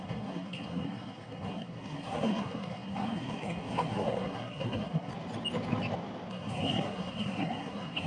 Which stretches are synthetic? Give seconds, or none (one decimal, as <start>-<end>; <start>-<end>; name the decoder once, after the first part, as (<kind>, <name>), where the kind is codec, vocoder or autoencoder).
0.0-5.1 (codec, SNAC); 6.3-8.1